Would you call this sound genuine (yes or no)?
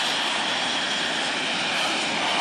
yes